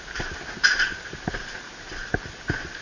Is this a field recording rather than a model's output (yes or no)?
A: yes